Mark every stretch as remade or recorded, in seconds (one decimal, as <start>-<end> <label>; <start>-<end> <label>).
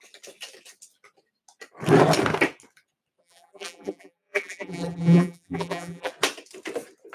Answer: 0.0-3.2 recorded; 3.2-6.1 remade; 6.1-7.1 recorded